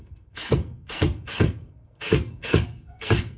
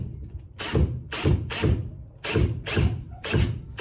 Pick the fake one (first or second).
first